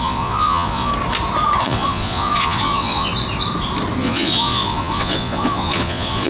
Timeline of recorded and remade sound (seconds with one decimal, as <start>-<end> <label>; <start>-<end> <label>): 0.0-0.9 remade; 0.9-1.6 recorded; 1.6-3.1 remade; 3.1-4.0 recorded; 4.0-6.3 remade